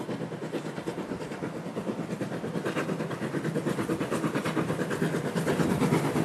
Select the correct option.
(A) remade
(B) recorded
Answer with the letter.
B